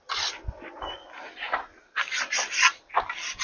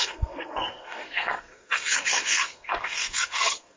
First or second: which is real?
first